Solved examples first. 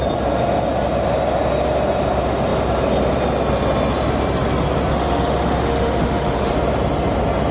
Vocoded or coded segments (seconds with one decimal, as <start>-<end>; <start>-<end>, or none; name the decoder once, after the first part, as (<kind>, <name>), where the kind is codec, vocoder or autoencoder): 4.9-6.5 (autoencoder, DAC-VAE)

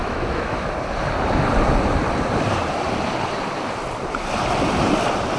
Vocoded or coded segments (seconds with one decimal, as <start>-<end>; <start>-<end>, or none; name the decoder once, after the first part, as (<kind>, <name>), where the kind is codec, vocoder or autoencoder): 0.0-0.7 (autoencoder, DAC-VAE)

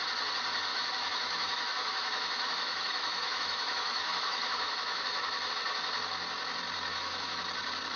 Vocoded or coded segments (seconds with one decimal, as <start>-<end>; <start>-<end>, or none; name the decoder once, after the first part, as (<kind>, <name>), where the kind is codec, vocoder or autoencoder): 0.7-5.5 (autoencoder, DAC-VAE); 6.9-7.4